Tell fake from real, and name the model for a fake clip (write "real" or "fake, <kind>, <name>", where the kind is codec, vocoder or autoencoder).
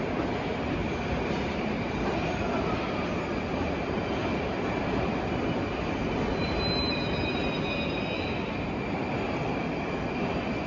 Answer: real